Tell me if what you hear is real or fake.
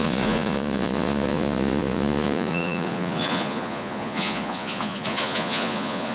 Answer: fake